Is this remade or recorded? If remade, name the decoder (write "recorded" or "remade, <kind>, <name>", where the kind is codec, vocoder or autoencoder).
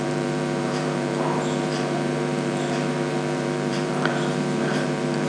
remade, vocoder, BigVGAN v2